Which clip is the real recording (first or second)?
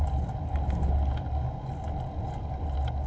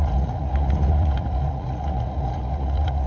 first